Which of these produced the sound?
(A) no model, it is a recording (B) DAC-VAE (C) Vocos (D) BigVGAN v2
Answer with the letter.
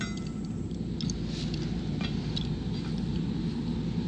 A